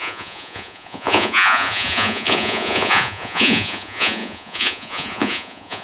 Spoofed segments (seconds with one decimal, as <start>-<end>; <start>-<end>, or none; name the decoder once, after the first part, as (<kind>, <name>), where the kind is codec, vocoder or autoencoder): 0.0-5.8 (vocoder, Vocos)